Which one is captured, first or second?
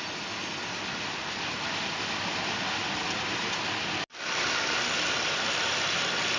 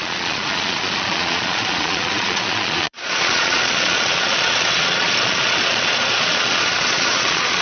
first